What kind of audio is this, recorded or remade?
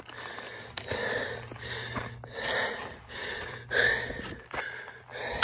recorded